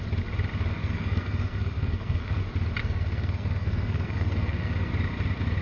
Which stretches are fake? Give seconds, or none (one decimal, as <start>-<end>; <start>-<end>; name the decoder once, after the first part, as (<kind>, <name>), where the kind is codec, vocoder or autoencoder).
0.8-2.4 (codec, SNAC); 2.8-4.9